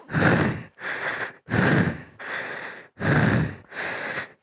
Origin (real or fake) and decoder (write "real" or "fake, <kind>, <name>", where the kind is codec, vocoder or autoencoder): real